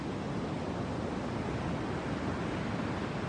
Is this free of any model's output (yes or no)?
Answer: yes